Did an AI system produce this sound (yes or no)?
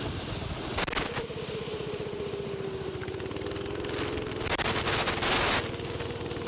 no